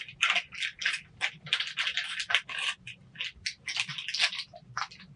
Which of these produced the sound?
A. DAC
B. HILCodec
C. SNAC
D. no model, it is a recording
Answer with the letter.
D